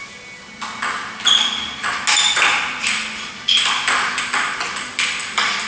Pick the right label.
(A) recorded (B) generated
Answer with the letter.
A